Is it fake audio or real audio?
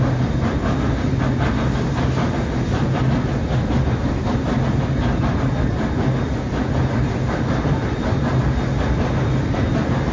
real